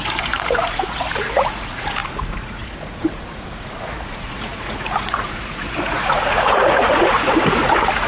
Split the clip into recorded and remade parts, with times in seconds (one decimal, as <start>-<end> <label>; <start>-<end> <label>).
0.0-8.1 remade